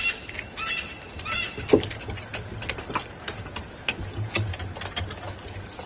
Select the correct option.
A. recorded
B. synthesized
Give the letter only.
A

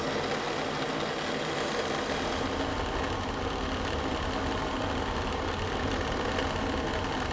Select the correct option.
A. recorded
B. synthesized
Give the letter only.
A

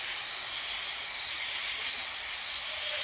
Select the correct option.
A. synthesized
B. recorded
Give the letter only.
B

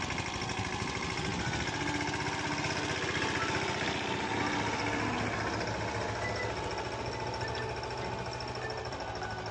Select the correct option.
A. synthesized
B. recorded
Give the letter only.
B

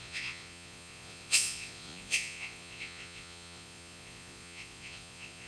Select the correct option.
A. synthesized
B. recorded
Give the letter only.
A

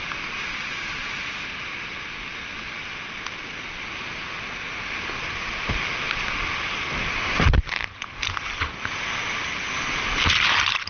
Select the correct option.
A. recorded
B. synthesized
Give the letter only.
A